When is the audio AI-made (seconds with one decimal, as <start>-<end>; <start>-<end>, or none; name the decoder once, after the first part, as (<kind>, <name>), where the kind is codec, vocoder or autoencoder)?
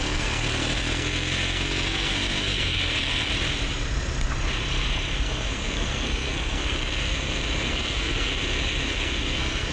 0.0-3.3 (codec, SNAC); 5.1-9.7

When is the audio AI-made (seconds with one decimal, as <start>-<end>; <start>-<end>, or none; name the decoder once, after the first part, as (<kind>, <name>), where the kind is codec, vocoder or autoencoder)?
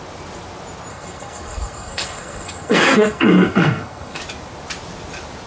0.9-4.2 (codec, SNAC)